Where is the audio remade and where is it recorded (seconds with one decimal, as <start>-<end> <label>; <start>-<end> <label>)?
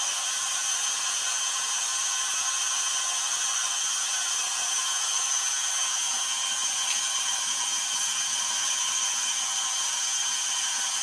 0.0-11.0 recorded